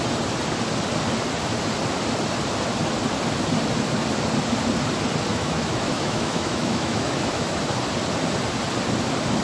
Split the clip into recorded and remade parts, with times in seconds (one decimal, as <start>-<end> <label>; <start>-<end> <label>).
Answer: 0.0-5.3 recorded; 5.3-7.6 remade; 7.6-9.4 recorded